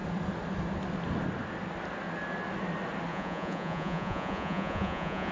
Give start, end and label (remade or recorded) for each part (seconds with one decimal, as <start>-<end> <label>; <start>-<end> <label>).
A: 0.0-3.1 recorded; 3.1-5.3 remade